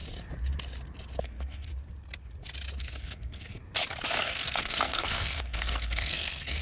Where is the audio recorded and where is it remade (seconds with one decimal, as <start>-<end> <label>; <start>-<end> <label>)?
0.0-1.2 recorded; 1.2-1.7 remade; 1.7-2.8 recorded; 2.8-3.6 remade; 3.6-4.2 recorded; 4.2-6.6 remade